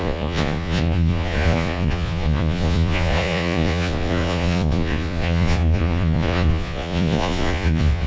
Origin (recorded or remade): remade